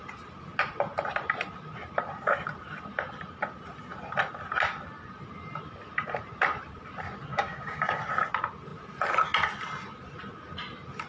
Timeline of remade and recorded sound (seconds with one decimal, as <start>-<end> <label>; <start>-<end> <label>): 0.0-7.3 recorded; 7.3-8.0 remade; 8.0-11.1 recorded